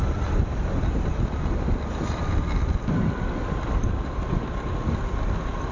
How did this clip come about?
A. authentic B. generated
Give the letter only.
A